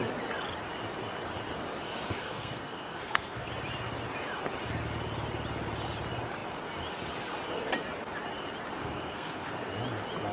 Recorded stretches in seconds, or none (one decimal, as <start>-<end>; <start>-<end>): 0.0-2.2; 3.5-8.8; 9.7-10.3